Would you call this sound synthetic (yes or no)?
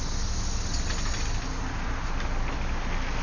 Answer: no